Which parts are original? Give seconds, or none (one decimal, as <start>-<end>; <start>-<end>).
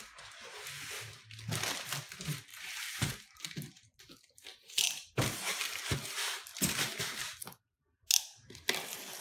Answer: 0.0-2.5; 4.0-4.5; 5.6-9.2